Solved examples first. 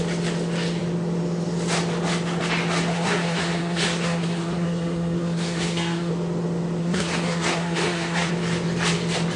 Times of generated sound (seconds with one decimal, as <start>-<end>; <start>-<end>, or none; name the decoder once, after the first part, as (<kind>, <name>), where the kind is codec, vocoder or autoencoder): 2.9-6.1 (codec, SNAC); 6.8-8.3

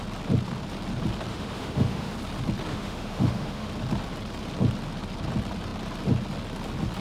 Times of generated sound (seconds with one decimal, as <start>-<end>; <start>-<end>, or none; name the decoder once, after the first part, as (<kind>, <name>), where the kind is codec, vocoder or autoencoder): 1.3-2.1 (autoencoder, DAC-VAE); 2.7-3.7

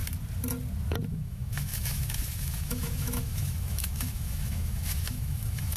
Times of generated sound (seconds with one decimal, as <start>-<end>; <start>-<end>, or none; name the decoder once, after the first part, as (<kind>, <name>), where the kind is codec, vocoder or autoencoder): 1.1-5.8 (autoencoder, DAC-VAE)

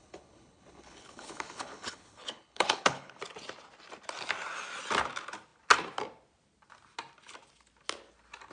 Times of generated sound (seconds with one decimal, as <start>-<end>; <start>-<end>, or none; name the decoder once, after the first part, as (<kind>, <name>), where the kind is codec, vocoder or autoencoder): 0.0-3.2 (codec, HILCodec)

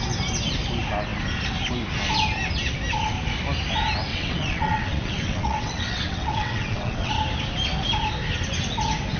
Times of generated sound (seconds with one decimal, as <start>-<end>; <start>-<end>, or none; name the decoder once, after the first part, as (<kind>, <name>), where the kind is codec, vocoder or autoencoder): 4.1-7.1 (vocoder, WaveNeXt)